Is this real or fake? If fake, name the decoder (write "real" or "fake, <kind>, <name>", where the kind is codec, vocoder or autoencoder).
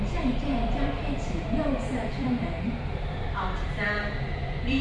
fake, vocoder, BigVGAN v2